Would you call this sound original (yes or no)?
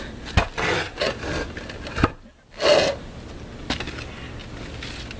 yes